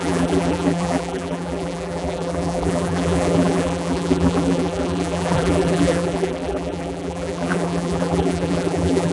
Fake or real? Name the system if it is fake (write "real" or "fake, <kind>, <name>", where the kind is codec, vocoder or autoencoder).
fake, vocoder, BigVGAN v2